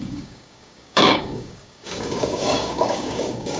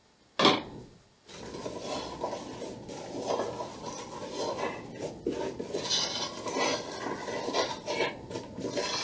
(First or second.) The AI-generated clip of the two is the first